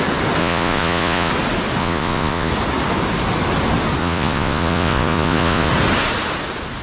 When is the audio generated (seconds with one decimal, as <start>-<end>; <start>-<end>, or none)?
0.4-1.3; 1.8-2.5; 4.0-5.7